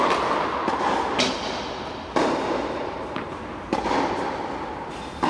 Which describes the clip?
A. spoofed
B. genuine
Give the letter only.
B